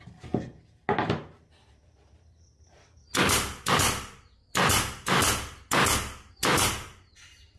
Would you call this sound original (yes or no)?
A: yes